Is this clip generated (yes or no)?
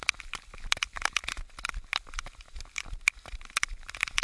no